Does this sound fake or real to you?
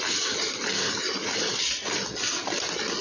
real